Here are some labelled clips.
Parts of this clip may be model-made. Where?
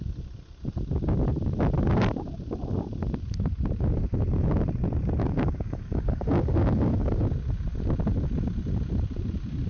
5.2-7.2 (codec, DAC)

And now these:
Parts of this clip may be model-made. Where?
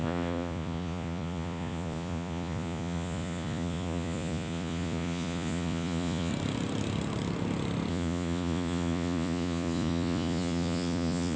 0.0-6.3 (vocoder, Vocos); 7.9-11.4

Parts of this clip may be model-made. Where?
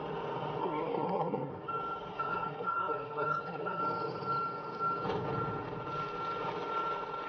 0.6-1.5 (codec, SNAC); 2.1-3.8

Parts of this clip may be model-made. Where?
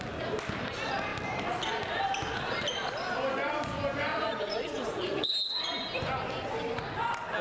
4.1-5.3 (vocoder, Vocos)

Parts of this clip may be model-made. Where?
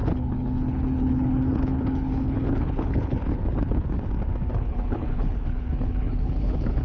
0.0-4.1 (codec, HILCodec); 4.5-6.8